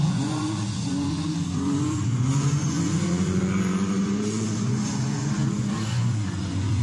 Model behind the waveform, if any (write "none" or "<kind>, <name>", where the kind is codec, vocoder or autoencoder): vocoder, Vocos